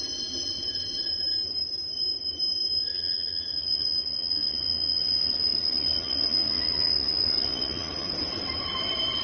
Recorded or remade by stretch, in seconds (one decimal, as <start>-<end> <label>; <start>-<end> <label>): 0.0-2.9 recorded; 2.9-8.1 remade; 8.1-9.2 recorded